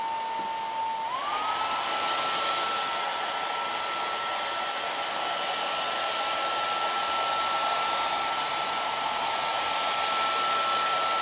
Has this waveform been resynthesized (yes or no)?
no